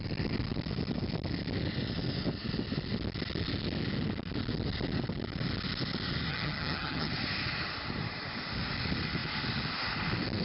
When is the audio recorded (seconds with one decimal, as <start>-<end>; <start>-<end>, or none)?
0.0-6.3; 7.1-10.4